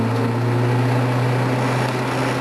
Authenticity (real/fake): real